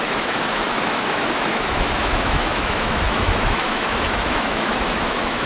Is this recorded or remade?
remade